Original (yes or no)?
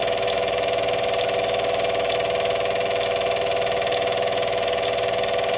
no